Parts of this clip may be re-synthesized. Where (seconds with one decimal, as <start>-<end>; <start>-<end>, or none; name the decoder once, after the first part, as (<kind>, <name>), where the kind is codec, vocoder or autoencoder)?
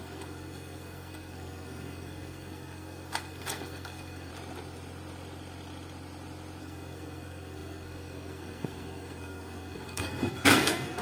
0.0-4.3 (codec, SNAC); 6.6-11.0